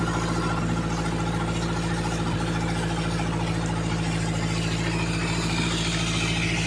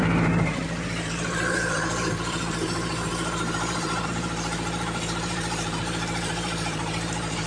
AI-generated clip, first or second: second